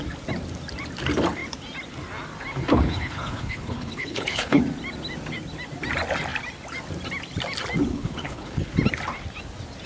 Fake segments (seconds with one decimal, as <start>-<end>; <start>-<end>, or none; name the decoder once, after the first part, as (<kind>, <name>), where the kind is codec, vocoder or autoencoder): 2.7-4.6 (codec, HILCodec); 7.9-8.7